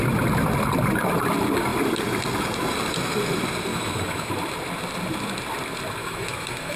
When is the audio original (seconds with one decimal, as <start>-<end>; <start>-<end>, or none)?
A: 0.0-3.7; 4.3-6.0